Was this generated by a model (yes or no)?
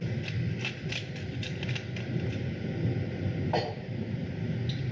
no